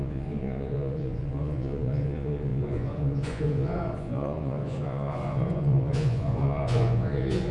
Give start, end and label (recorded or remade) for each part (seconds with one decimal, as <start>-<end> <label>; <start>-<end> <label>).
0.0-7.5 remade